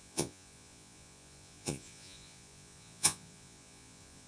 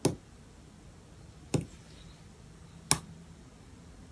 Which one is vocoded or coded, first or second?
first